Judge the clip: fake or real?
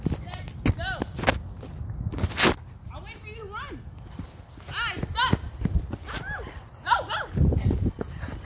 real